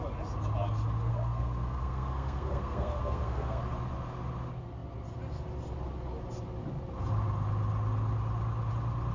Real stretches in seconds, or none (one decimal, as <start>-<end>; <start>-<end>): 0.0-1.1; 3.6-9.1